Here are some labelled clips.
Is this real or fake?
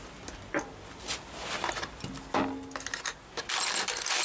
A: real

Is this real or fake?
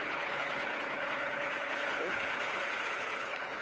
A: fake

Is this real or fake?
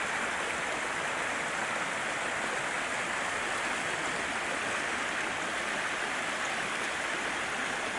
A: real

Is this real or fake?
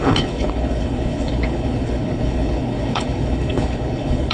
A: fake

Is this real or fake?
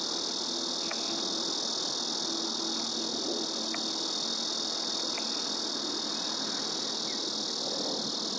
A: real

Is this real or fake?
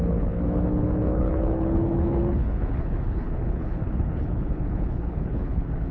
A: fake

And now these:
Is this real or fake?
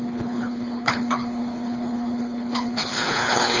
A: fake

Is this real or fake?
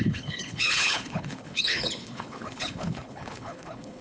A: fake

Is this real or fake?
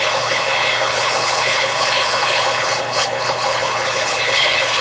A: fake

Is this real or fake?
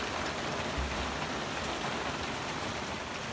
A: real